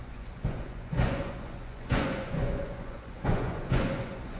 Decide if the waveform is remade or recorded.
remade